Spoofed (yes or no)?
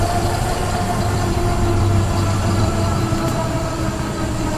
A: yes